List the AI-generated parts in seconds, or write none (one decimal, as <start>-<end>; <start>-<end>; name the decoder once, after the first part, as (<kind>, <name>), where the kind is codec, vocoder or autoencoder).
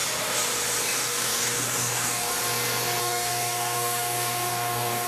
0.8-2.3 (codec, DAC); 3.0-5.1